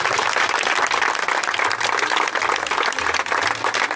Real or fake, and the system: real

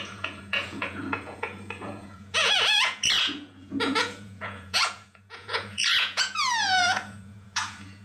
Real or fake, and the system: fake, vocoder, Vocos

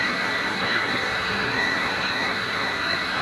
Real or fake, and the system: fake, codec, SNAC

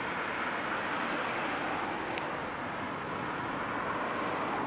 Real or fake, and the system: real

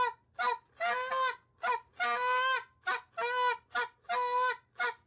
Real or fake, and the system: real